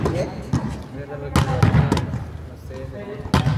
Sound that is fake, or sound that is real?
real